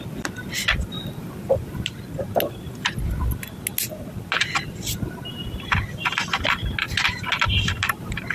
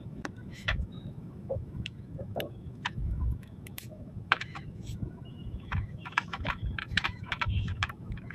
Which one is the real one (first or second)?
first